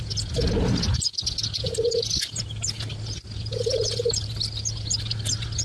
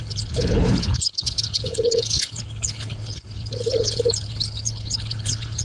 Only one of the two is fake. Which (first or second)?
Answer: second